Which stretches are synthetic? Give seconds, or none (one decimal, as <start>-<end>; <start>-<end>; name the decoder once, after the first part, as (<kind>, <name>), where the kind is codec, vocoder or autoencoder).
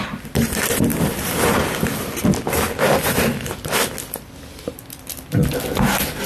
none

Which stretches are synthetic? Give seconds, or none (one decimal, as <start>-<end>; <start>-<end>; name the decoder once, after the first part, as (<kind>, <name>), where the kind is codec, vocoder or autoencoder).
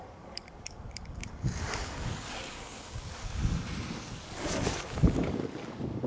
0.0-3.4 (codec, DAC); 4.1-6.1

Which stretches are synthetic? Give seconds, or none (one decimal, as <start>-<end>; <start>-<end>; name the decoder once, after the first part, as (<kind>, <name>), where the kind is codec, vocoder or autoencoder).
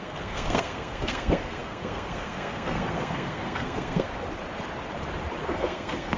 0.0-4.1 (codec, SNAC); 5.4-6.2